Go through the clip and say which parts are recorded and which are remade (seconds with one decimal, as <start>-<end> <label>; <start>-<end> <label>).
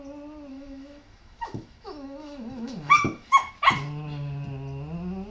0.0-0.5 recorded; 0.5-3.5 remade; 3.5-5.3 recorded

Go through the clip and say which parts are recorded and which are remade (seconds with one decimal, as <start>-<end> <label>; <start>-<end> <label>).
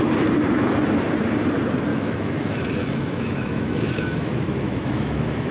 0.0-1.9 recorded; 1.9-5.5 remade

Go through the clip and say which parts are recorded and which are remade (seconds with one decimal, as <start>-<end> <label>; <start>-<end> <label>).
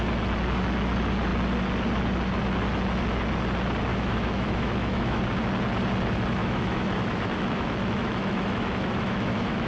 0.0-3.9 recorded; 3.9-5.2 remade; 5.2-6.4 recorded; 6.4-9.7 remade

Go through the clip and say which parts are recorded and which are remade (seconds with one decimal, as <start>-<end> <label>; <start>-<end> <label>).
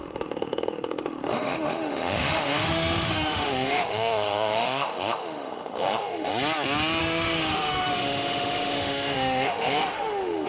0.0-6.3 remade; 6.3-7.0 recorded; 7.0-10.5 remade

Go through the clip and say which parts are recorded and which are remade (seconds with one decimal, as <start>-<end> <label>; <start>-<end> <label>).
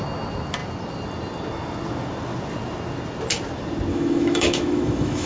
0.0-3.9 recorded; 3.9-5.3 remade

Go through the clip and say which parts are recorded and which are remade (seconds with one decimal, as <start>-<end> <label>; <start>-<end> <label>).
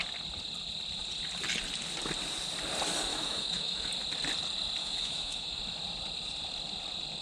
0.0-3.1 recorded; 3.1-3.9 remade; 3.9-4.8 recorded; 4.8-5.6 remade; 5.6-7.2 recorded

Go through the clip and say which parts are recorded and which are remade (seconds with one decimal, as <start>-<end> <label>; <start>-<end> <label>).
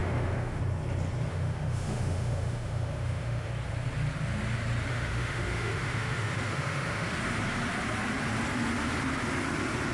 0.0-0.6 remade; 0.6-1.3 recorded; 1.3-3.5 remade; 3.5-4.9 recorded; 4.9-7.1 remade; 7.1-9.9 recorded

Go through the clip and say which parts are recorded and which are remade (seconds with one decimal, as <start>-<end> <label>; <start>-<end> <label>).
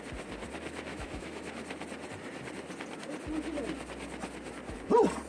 0.0-0.9 recorded; 0.9-1.5 remade; 1.5-5.3 recorded